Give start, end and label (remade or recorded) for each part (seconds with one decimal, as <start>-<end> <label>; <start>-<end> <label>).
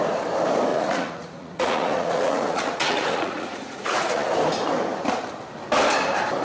0.0-0.7 recorded; 0.7-4.3 remade; 4.3-6.4 recorded